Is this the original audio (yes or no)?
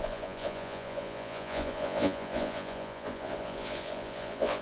no